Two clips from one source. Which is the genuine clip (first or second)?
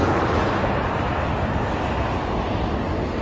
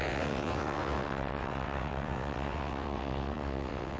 first